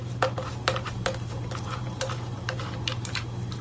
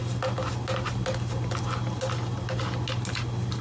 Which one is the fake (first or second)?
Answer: first